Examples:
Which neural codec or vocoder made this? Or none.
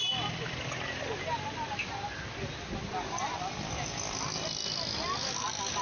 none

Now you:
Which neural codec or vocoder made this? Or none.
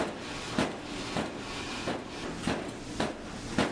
none